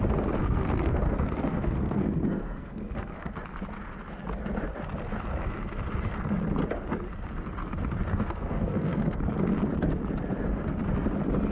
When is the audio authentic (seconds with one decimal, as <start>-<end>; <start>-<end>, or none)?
0.0-0.4; 3.3-8.1; 9.2-11.5